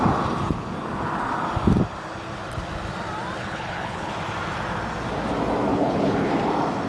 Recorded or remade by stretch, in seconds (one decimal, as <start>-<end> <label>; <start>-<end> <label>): 0.0-3.4 recorded; 3.4-4.1 remade; 4.1-5.7 recorded; 5.7-6.3 remade; 6.3-6.9 recorded